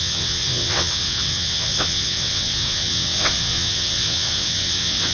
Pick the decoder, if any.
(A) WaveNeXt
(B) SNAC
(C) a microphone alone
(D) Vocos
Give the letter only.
A